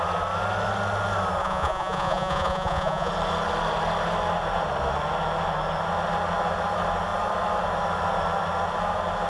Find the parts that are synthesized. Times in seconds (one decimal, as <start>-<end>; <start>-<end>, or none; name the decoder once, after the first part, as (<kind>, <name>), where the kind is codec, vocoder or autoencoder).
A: 1.4-3.1 (vocoder, Vocos)